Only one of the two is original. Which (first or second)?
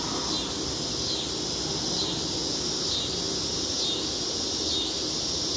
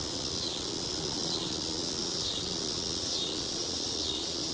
first